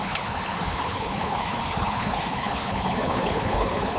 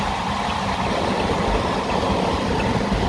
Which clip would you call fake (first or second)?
first